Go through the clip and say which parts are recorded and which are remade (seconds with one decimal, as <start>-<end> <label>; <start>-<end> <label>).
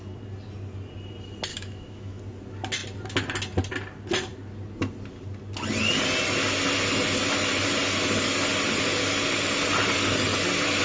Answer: 0.0-1.5 recorded; 1.5-2.2 remade; 2.2-10.8 recorded